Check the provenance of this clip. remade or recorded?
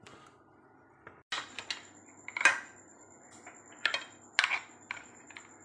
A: recorded